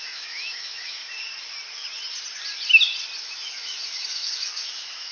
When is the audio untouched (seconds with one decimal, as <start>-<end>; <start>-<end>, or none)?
1.0-3.2